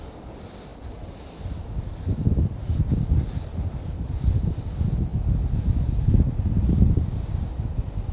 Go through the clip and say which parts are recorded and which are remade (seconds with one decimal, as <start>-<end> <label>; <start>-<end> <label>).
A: 0.0-8.1 recorded